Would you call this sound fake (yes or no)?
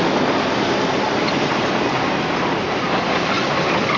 no